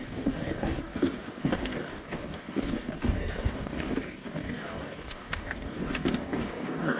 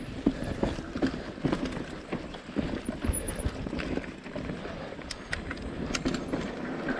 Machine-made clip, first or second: first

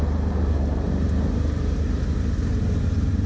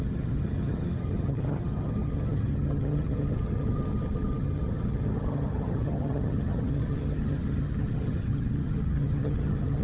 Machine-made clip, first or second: second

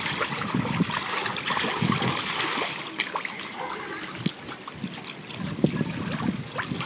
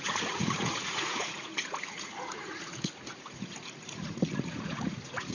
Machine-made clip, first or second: second